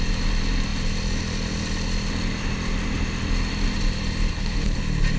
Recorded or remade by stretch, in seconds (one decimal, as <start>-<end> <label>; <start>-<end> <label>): 0.0-4.3 recorded; 4.3-4.8 remade; 4.8-5.2 recorded